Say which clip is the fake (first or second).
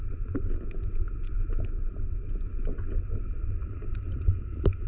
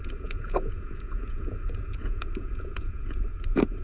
second